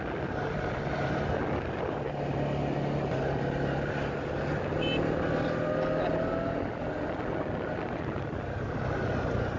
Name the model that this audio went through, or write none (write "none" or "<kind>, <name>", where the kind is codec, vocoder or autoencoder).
none